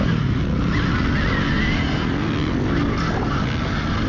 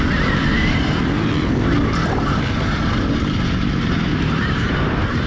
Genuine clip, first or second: first